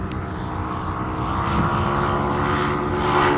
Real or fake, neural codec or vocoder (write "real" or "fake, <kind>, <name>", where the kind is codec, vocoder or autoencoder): real